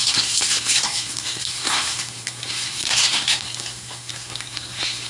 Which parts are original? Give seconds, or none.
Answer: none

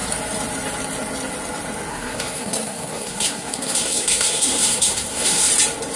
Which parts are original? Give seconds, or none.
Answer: 0.0-1.9; 5.5-6.0

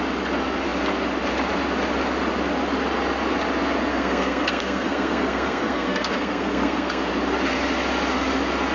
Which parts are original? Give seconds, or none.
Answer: 0.0-3.9; 7.1-8.7

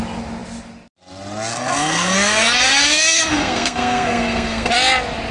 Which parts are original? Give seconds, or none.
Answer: 0.0-1.5; 4.7-5.3

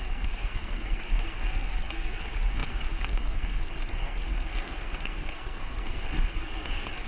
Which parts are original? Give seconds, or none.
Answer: none

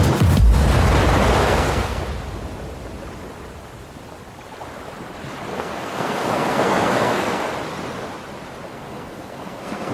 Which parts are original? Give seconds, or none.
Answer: 0.0-1.4; 2.0-5.5; 7.5-8.7

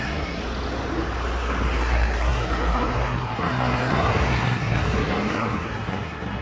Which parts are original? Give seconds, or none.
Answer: 0.4-1.8

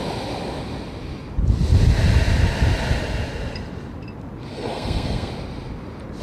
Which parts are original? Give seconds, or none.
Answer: 0.0-4.5; 5.3-6.2